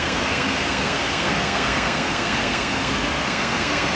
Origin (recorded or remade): remade